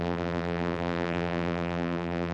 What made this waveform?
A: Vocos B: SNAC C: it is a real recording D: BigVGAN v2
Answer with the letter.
D